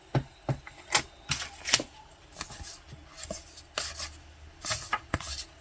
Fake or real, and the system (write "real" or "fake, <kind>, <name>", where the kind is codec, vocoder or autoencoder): real